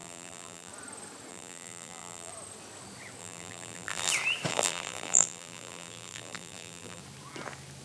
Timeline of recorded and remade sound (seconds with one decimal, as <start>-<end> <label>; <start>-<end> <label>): 0.0-0.7 remade; 0.7-1.3 recorded; 1.3-2.3 remade; 2.3-3.2 recorded; 3.2-4.1 remade; 4.1-4.5 recorded; 4.5-7.0 remade; 7.0-7.8 recorded